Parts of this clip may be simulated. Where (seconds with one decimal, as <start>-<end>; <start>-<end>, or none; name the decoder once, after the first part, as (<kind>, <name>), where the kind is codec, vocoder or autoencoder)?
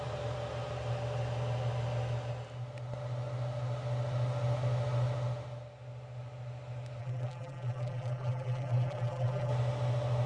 7.0-9.5 (vocoder, BigVGAN v2)